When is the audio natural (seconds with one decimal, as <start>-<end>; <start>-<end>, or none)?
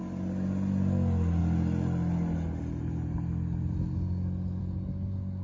0.0-5.4